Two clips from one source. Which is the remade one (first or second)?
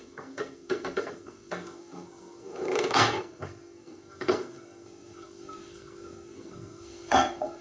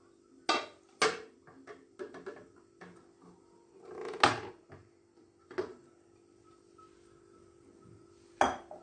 first